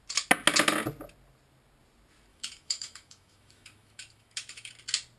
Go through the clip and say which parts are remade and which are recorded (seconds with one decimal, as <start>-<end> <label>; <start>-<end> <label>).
0.0-2.3 recorded; 2.3-4.7 remade; 4.7-5.2 recorded

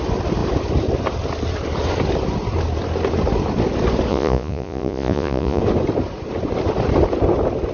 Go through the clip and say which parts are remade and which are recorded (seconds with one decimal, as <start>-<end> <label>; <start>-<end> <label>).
0.0-4.1 recorded; 4.1-5.6 remade; 5.6-7.7 recorded

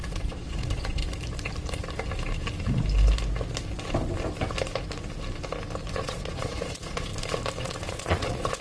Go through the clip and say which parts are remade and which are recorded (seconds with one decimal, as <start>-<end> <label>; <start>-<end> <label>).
0.0-1.0 remade; 1.0-5.9 recorded; 5.9-7.1 remade; 7.1-7.6 recorded; 7.6-8.6 remade

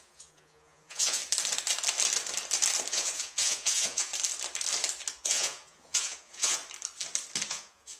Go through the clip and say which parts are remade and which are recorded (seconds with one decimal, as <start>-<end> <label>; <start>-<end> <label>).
0.0-1.2 remade; 1.2-2.9 recorded; 2.9-4.1 remade; 4.1-5.1 recorded; 5.1-6.6 remade; 6.6-7.5 recorded; 7.5-8.0 remade

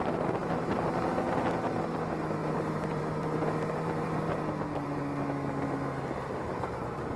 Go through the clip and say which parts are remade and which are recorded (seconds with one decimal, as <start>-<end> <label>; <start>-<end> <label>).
0.0-0.4 recorded; 0.4-0.9 remade; 0.9-2.4 recorded; 2.4-5.0 remade; 5.0-7.2 recorded

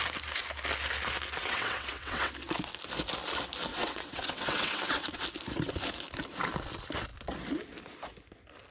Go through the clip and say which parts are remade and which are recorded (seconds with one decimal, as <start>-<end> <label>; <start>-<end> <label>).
0.0-1.4 recorded; 1.4-2.3 remade; 2.3-3.7 recorded; 3.7-5.2 remade; 5.2-8.7 recorded